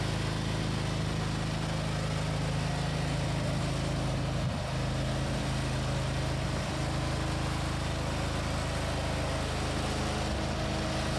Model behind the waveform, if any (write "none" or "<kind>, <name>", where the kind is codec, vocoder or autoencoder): none